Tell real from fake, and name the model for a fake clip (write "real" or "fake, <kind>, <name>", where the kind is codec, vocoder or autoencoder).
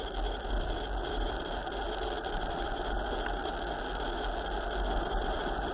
real